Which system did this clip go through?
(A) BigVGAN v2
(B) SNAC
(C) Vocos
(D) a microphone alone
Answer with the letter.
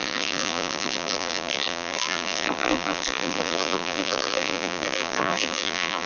A